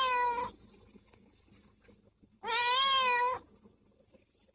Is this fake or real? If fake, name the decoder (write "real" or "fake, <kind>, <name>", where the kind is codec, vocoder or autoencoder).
real